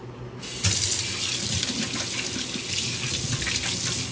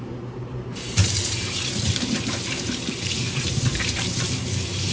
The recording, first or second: first